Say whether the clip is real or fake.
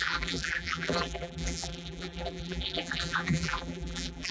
fake